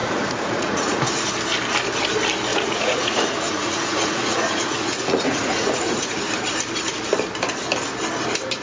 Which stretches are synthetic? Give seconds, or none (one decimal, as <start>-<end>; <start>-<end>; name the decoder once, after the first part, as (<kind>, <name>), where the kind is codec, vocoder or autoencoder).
0.0-1.3 (vocoder, Vocos); 2.5-6.2